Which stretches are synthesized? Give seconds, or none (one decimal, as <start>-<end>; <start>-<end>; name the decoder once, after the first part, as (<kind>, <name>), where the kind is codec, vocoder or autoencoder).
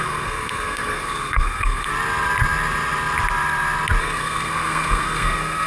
0.0-1.9 (codec, SNAC); 4.0-5.7